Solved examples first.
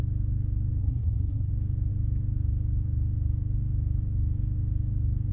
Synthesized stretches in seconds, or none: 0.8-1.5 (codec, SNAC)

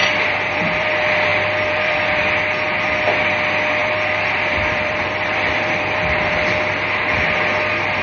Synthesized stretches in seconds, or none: 0.0-0.9 (vocoder, BigVGAN v2); 1.3-2.2; 3.8-6.3

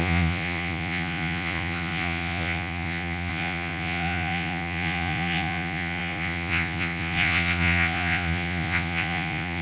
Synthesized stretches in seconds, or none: 0.0-9.6 (vocoder, Vocos)

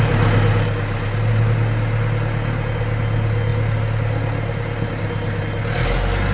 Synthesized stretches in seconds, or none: none

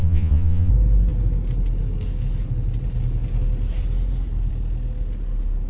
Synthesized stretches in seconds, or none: 0.0-0.7 (vocoder, Vocos)

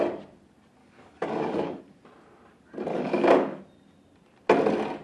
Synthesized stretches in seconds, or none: 0.8-1.8 (codec, DAC); 2.9-3.6